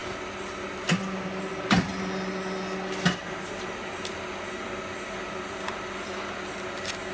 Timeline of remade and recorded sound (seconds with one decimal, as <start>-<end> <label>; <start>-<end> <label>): 0.0-7.1 recorded